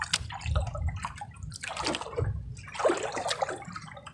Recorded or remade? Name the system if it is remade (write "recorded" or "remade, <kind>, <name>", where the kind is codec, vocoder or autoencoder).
recorded